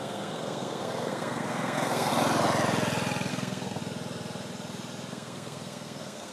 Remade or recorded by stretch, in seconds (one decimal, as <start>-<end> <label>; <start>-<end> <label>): 0.0-2.1 remade; 2.1-3.3 recorded; 3.3-3.8 remade; 3.8-5.1 recorded; 5.1-6.3 remade